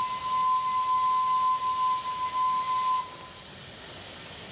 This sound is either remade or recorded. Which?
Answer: recorded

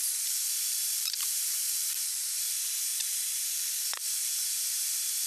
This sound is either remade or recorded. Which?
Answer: remade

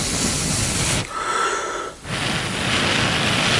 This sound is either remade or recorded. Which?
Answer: recorded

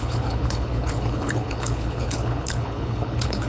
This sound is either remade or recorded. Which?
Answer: remade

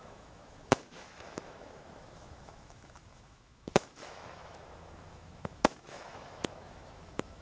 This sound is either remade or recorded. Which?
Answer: remade